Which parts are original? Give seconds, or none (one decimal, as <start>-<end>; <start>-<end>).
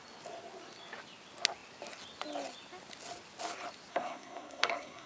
0.0-3.9